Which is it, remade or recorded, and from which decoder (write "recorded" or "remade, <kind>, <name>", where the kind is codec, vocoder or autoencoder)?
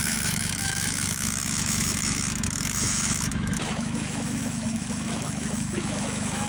remade, autoencoder, DAC-VAE